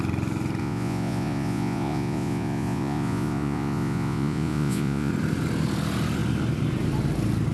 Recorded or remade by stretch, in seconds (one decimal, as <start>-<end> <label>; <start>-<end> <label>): 0.0-0.6 recorded; 0.6-5.1 remade; 5.1-7.5 recorded